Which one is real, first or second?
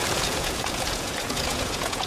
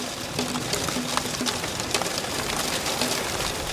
second